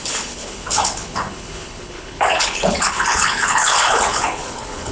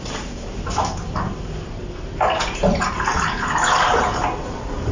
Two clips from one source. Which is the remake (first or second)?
first